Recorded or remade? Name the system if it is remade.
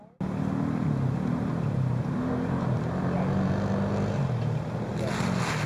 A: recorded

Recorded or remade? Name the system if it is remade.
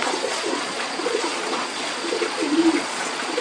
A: remade, vocoder, Vocos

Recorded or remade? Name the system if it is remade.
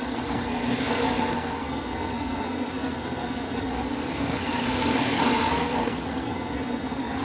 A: remade, codec, SNAC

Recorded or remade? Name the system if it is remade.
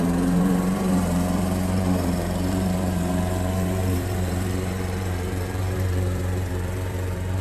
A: remade, vocoder, BigVGAN v2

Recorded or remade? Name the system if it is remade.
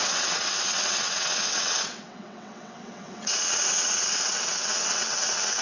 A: remade, vocoder, WaveNeXt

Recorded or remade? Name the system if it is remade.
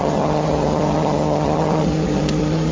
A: remade, vocoder, HiFi-GAN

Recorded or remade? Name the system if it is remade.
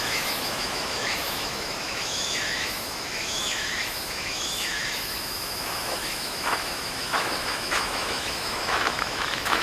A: remade, autoencoder, DAC-VAE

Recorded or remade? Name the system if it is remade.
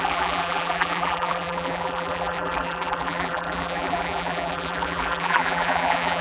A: remade, vocoder, BigVGAN v2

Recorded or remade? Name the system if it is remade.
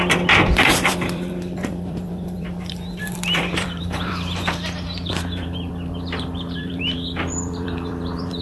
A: remade, vocoder, BigVGAN v2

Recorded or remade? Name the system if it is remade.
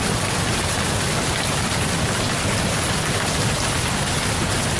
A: recorded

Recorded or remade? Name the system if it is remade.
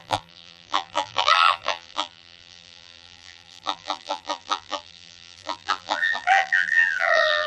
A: remade, vocoder, BigVGAN v2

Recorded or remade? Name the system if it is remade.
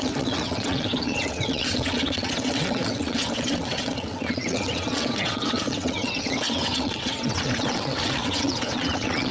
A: remade, vocoder, WaveNeXt